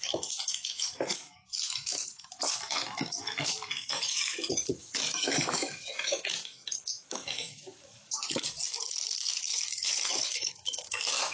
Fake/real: fake